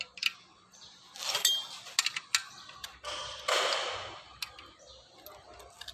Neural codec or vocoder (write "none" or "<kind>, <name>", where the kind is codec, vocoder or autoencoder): none